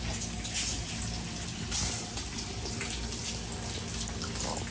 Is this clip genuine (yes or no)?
yes